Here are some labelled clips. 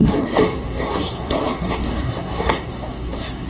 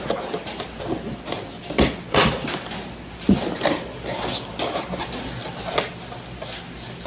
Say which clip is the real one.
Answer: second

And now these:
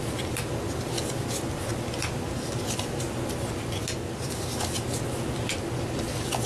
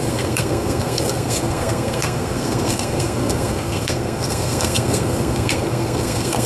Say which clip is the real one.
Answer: first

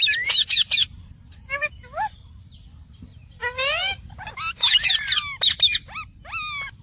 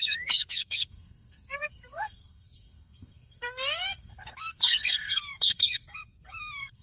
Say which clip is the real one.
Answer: first